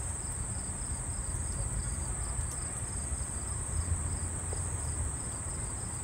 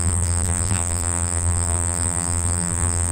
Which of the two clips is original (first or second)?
first